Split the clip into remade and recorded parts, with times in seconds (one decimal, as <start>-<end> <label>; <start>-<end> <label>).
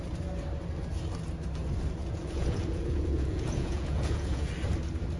0.0-2.0 recorded; 2.0-4.5 remade; 4.5-5.2 recorded